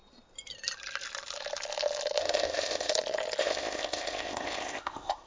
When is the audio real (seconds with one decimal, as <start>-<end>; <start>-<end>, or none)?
0.0-2.2; 2.9-3.4

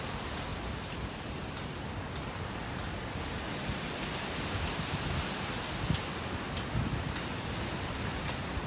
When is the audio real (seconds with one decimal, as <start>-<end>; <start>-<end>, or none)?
0.0-8.7

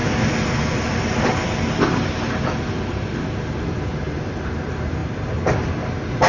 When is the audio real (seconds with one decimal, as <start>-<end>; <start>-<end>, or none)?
0.0-6.3

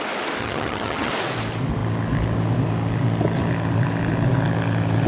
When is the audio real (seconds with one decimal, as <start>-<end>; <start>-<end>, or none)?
0.0-0.4; 1.1-5.1